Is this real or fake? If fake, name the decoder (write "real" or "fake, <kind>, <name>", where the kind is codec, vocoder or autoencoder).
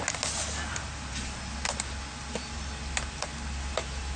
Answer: real